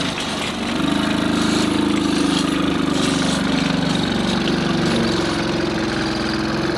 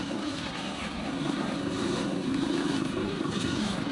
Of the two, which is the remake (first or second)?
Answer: second